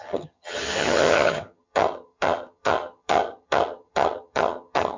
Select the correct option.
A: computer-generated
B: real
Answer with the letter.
A